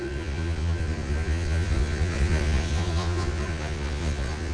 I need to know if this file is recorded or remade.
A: remade